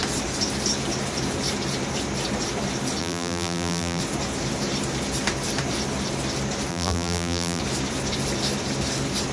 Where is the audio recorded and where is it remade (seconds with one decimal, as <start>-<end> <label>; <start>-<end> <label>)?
0.0-3.0 recorded; 3.0-4.0 remade; 4.0-6.7 recorded; 6.7-7.6 remade; 7.6-9.3 recorded